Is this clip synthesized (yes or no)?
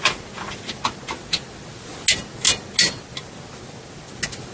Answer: no